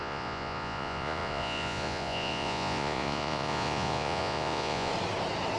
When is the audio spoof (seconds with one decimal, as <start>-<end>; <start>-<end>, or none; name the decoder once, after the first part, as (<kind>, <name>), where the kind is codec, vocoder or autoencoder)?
0.0-4.9 (vocoder, Vocos)